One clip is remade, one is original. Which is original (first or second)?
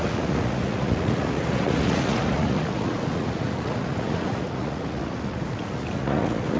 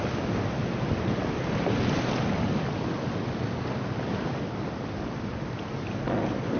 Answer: second